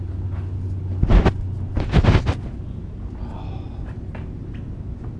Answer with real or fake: real